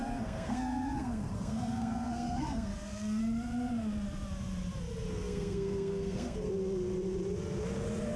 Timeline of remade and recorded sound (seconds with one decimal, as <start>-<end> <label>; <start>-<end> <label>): 0.0-3.2 remade; 3.2-5.1 recorded; 5.1-6.5 remade; 6.5-8.2 recorded